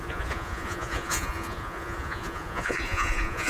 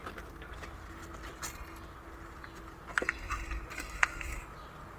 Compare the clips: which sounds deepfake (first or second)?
first